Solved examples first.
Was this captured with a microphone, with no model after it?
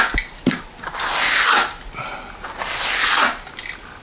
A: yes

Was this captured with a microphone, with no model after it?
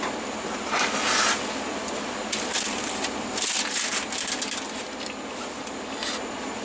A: yes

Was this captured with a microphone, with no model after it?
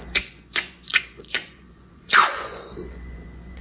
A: no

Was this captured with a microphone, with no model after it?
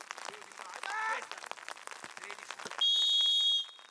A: yes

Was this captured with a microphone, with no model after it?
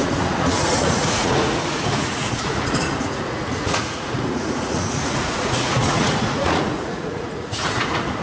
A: no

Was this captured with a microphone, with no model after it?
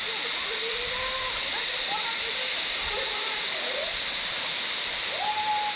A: yes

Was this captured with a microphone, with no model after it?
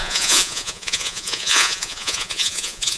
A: no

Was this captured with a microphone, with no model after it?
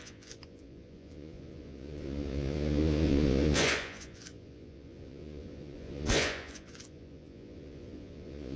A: no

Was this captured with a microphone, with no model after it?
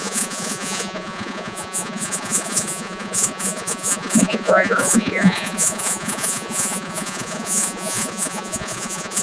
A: no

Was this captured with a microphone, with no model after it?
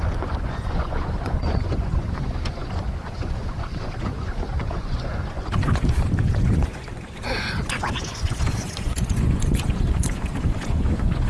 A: no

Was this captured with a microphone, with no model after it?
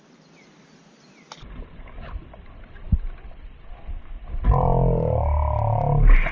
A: yes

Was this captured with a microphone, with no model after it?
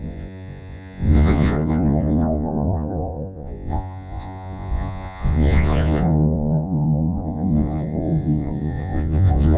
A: no